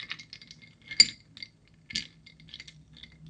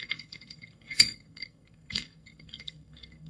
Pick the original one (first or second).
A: first